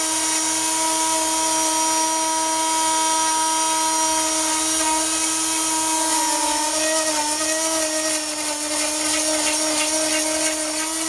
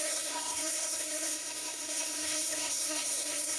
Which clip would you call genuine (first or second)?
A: first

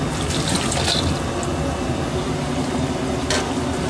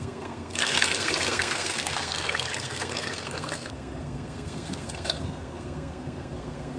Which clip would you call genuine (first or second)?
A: first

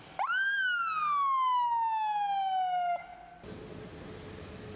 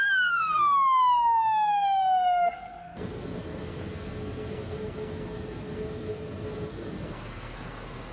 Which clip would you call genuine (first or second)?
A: first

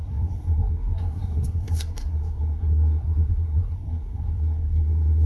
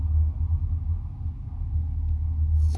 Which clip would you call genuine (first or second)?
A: second